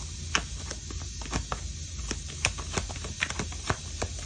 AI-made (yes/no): no